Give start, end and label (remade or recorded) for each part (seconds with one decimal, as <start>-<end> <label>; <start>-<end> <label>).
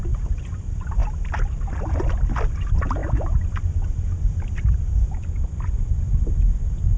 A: 0.0-7.0 recorded